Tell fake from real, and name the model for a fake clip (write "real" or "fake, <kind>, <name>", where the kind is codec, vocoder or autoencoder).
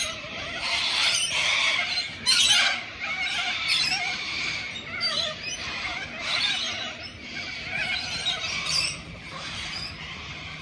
fake, vocoder, BigVGAN v2